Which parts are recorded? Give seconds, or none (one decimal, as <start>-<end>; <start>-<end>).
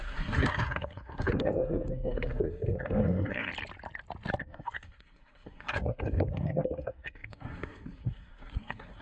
3.5-4.4